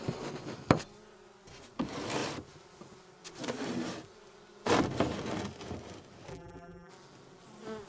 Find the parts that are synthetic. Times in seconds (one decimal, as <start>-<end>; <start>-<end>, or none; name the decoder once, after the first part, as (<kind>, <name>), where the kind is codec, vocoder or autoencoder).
6.3-6.9 (vocoder, BigVGAN v2)